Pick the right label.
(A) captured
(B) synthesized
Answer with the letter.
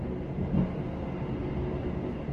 A